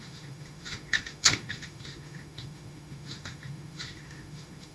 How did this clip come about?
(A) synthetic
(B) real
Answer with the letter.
A